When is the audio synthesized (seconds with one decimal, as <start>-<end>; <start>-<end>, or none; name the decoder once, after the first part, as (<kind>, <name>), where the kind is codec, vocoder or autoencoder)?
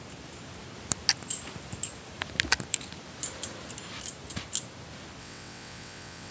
5.2-6.3 (vocoder, WaveNeXt)